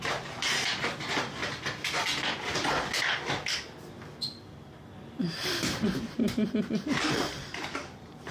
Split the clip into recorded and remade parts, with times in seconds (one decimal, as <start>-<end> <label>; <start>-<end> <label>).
0.0-1.4 remade; 1.4-5.2 recorded; 5.2-8.3 remade